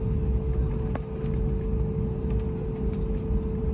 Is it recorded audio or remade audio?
recorded